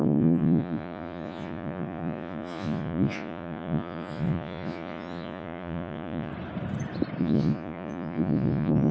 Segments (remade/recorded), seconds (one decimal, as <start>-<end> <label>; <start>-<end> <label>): 0.0-6.3 remade; 6.3-7.2 recorded; 7.2-8.9 remade